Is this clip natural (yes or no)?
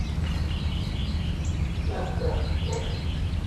yes